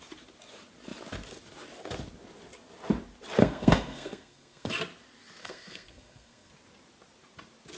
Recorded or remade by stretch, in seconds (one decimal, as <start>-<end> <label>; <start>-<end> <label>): 0.0-3.4 recorded; 3.4-4.7 remade; 4.7-5.4 recorded; 5.4-6.5 remade; 6.5-7.8 recorded